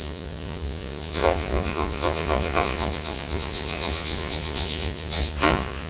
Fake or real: fake